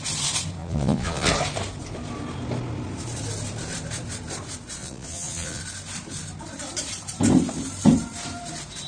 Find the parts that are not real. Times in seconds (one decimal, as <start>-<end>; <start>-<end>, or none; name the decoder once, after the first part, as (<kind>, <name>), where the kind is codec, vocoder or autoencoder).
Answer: 0.6-1.3 (vocoder, Vocos); 4.8-5.6